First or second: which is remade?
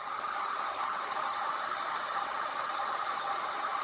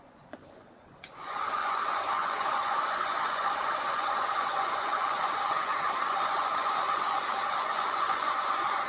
second